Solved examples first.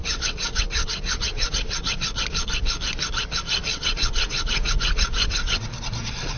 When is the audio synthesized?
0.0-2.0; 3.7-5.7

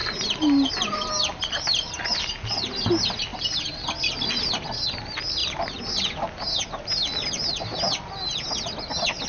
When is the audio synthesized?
none

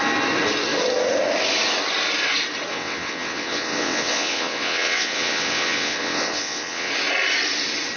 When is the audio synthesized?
2.7-6.9

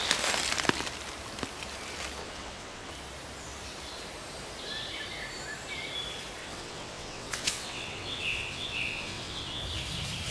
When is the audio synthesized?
2.2-2.9; 6.4-9.6

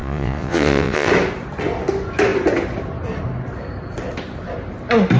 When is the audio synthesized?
0.0-1.1

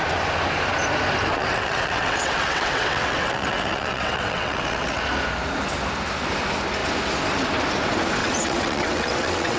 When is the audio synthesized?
1.3-5.0; 8.2-9.6